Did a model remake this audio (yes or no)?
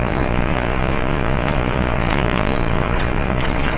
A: yes